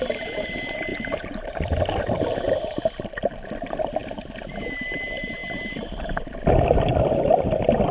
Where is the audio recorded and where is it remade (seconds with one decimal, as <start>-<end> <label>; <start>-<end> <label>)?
0.0-7.9 remade